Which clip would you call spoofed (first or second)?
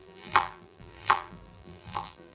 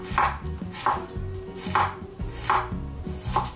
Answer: first